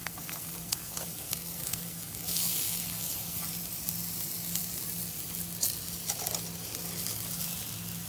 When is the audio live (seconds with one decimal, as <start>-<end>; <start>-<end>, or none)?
3.4-8.1